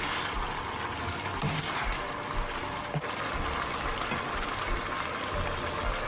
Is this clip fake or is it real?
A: real